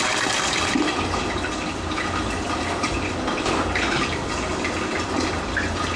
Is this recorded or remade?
recorded